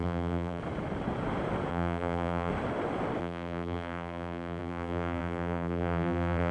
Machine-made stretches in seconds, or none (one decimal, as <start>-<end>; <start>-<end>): 0.0-0.6; 1.7-2.5; 3.2-6.5